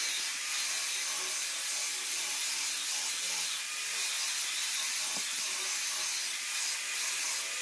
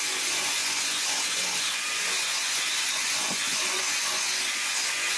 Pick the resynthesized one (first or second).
second